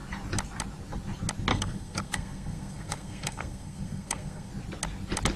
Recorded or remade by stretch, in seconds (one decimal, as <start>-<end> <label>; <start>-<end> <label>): 0.0-1.5 recorded; 1.5-4.5 remade; 4.5-5.4 recorded